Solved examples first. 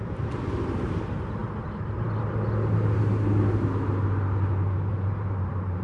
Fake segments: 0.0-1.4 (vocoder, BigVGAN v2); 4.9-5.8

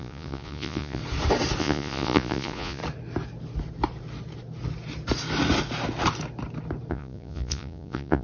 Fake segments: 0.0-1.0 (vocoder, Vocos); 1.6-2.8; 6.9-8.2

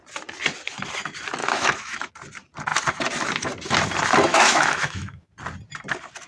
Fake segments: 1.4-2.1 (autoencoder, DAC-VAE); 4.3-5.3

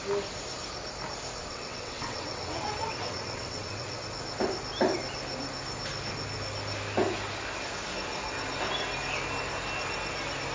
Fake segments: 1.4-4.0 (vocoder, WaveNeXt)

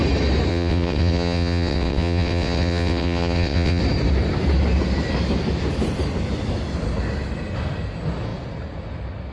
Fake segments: 0.5-3.8 (vocoder, WaveNeXt)